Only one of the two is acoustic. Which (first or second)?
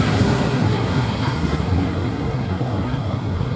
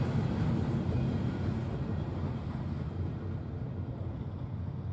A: second